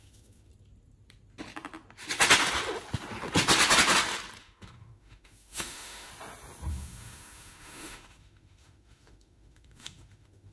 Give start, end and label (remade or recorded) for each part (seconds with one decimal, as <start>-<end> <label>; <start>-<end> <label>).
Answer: 0.0-0.5 remade; 0.5-4.4 recorded; 4.4-6.1 remade; 6.1-6.7 recorded; 6.7-10.5 remade